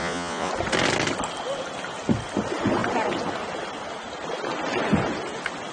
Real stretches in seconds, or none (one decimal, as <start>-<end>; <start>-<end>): 0.5-5.7